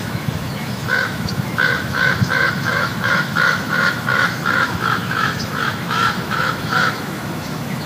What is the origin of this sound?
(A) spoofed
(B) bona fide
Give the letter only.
A